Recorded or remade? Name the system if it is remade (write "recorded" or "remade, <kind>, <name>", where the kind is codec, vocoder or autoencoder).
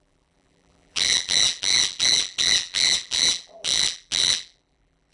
remade, vocoder, BigVGAN v2